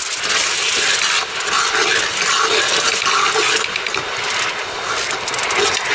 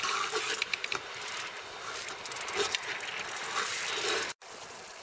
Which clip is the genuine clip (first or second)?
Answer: first